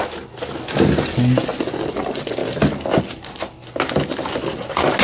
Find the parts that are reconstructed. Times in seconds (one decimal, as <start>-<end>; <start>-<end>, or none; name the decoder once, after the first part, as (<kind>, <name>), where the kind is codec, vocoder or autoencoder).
none